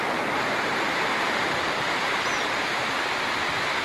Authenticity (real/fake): fake